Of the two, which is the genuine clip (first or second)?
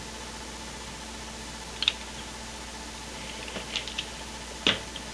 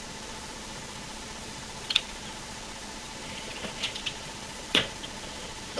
first